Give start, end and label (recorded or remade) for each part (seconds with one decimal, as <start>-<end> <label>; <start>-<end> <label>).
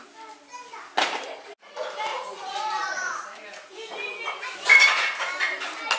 0.0-2.1 recorded; 2.1-3.2 remade; 3.2-6.0 recorded